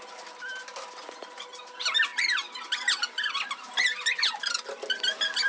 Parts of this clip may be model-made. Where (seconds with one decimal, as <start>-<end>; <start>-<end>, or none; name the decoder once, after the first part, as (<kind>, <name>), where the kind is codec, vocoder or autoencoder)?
none